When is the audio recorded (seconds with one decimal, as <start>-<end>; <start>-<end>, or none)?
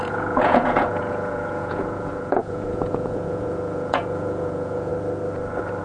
4.9-5.8